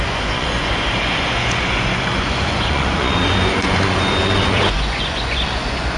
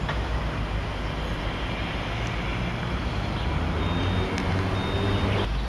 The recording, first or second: second